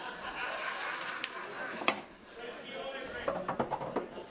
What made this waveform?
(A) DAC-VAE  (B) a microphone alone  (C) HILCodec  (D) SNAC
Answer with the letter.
B